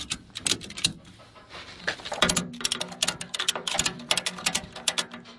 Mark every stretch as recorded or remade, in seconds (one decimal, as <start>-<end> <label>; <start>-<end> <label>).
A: 0.0-5.4 recorded